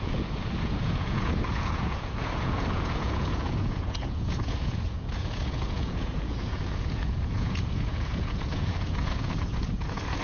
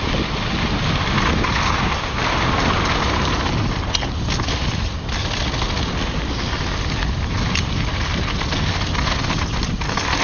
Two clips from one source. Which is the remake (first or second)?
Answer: first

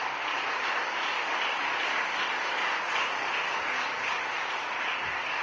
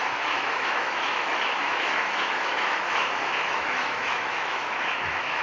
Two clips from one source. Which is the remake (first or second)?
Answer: second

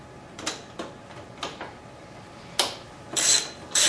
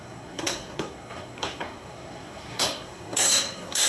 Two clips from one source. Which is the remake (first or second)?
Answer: second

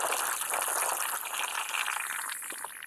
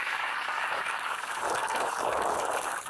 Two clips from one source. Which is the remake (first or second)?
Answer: second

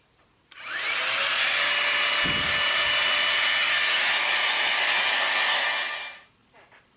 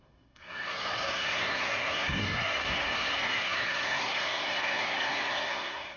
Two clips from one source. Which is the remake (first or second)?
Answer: second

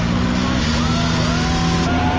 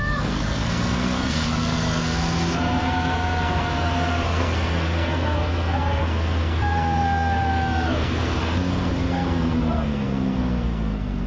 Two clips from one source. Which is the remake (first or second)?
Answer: second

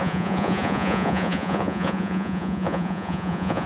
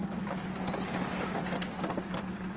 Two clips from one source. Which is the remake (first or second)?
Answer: first